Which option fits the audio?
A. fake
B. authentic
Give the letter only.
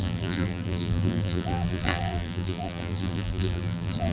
A